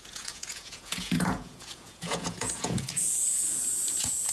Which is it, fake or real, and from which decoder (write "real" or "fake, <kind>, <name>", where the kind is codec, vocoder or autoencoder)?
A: fake, vocoder, Vocos